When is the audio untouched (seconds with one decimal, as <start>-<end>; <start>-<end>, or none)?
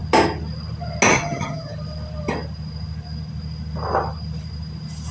0.0-1.1; 1.7-5.1